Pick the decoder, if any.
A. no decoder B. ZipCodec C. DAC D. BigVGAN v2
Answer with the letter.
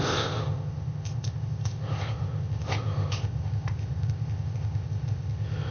B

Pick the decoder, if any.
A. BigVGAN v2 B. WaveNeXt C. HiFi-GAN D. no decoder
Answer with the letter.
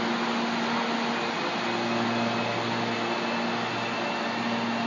D